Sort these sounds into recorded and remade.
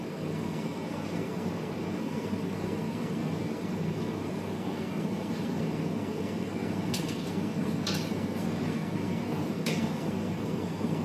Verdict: remade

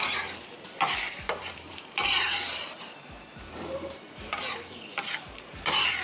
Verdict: remade